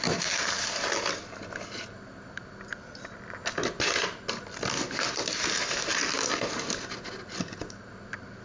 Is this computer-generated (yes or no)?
no